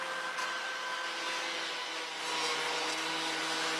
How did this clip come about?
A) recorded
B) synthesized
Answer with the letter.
A